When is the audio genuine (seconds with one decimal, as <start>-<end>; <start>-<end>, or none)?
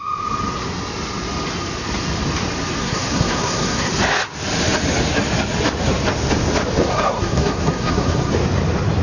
0.0-2.8; 3.9-6.8; 8.3-9.0